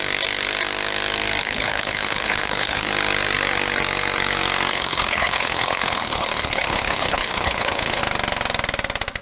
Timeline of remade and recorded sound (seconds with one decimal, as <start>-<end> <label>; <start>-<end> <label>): 0.0-1.4 recorded; 1.4-2.9 remade; 2.9-4.7 recorded; 4.7-8.0 remade; 8.0-9.2 recorded